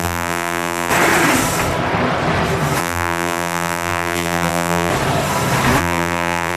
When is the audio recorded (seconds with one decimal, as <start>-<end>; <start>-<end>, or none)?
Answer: 0.9-2.8; 4.9-5.8